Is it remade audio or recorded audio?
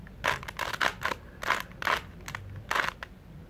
recorded